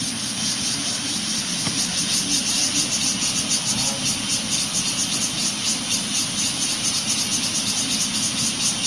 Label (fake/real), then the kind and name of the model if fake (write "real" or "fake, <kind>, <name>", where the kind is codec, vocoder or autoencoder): real